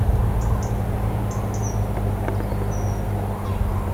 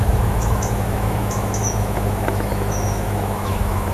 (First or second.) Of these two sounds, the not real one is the second